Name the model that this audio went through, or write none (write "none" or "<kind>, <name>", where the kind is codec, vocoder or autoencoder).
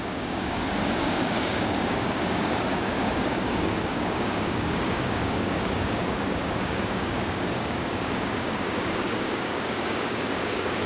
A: codec, DAC